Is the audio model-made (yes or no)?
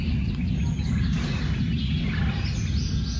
no